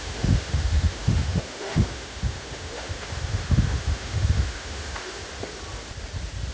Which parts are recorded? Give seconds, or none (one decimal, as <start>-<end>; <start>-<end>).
5.2-6.5